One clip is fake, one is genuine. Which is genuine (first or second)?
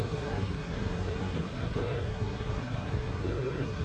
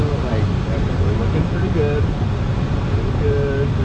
second